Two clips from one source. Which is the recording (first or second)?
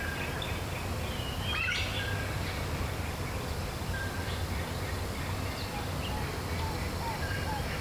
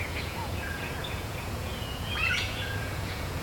first